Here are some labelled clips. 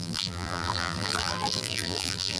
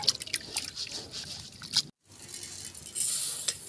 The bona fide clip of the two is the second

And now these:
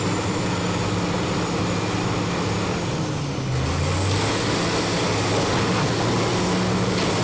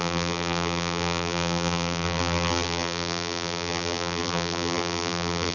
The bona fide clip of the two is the first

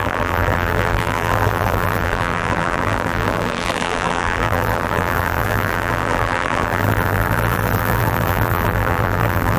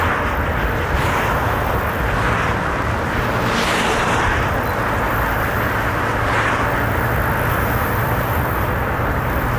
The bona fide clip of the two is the second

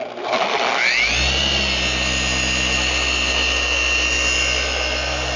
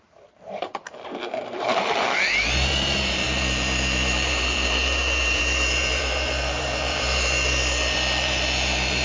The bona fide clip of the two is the first